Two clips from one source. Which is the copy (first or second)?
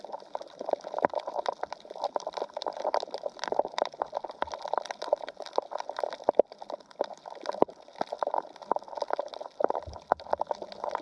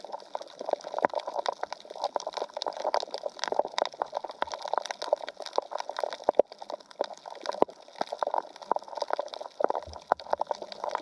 first